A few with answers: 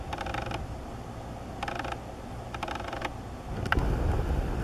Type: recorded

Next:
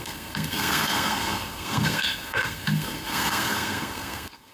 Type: remade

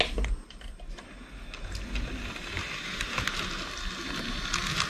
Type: recorded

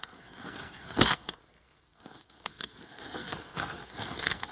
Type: remade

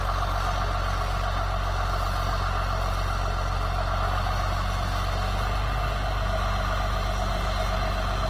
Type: recorded